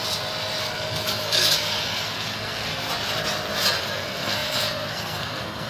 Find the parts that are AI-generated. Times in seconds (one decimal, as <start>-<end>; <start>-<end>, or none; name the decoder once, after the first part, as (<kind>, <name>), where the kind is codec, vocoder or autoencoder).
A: 0.6-2.7 (codec, SNAC); 3.8-5.7